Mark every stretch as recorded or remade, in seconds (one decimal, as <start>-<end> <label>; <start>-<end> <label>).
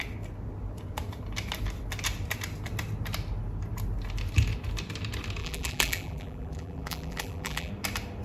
0.0-5.4 recorded; 5.4-7.7 remade; 7.7-8.2 recorded